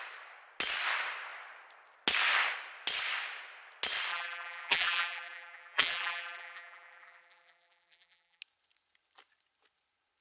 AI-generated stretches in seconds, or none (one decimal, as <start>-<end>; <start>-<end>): 4.1-8.4